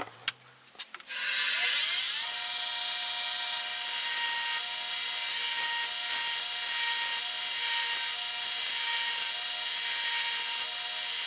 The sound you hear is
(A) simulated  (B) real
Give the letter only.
B